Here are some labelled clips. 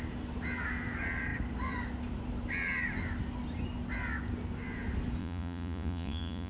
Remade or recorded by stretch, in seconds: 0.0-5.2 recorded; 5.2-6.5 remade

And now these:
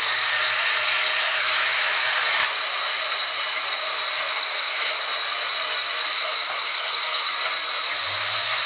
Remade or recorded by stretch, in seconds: 0.0-1.3 recorded; 1.3-2.0 remade; 2.0-4.3 recorded; 4.3-5.0 remade; 5.0-6.1 recorded; 6.1-7.3 remade; 7.3-8.7 recorded

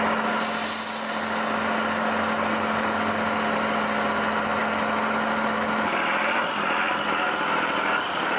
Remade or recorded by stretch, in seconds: 0.0-8.4 recorded

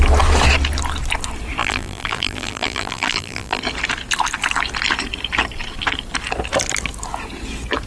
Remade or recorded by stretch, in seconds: 0.0-1.6 recorded; 1.6-3.6 remade; 3.6-7.9 recorded